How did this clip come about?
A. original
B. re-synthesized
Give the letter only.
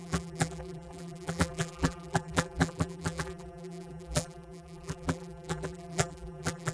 B